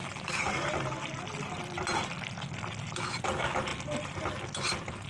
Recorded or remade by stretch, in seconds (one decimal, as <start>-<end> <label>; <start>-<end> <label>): 0.0-5.1 recorded